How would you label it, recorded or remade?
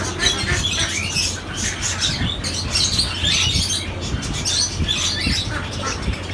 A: recorded